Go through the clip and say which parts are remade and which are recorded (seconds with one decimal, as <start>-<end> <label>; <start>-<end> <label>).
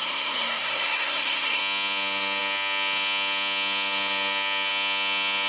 0.0-1.6 remade; 1.6-5.5 recorded